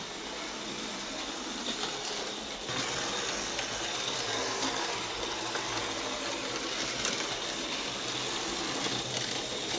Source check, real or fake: real